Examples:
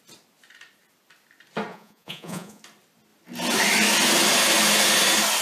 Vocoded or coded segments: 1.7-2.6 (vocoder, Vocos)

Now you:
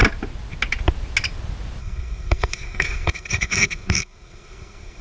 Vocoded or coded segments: 1.8-5.0 (codec, SNAC)

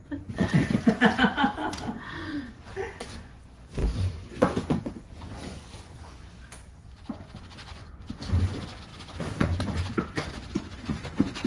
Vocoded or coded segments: 0.0-11.5 (vocoder, Vocos)

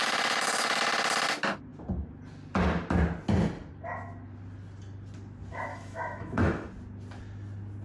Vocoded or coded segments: 0.0-0.8 (autoencoder, DAC-VAE); 5.7-6.7

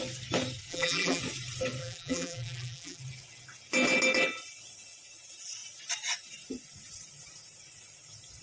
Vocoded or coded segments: 0.7-1.2 (vocoder, BigVGAN v2); 1.8-3.0

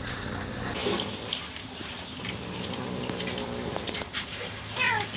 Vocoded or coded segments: none